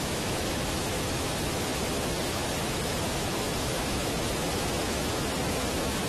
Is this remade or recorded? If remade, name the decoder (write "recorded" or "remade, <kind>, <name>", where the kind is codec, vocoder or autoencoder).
remade, autoencoder, DAC-VAE